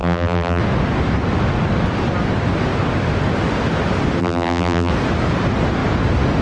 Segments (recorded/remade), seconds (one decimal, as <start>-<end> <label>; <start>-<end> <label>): 0.0-0.6 remade; 0.6-4.2 recorded; 4.2-4.9 remade; 4.9-6.4 recorded